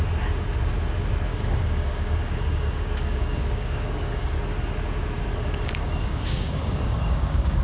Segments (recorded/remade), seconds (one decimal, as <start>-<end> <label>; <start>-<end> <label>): 0.0-1.3 recorded; 1.3-4.4 remade; 4.4-5.3 recorded; 5.3-7.6 remade